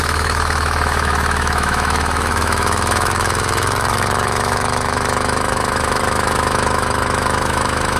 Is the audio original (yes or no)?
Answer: no